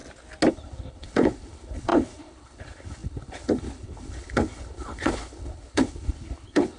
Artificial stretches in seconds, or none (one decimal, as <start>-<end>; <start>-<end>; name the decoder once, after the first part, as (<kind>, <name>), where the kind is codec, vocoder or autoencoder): 0.5-6.8 (codec, HILCodec)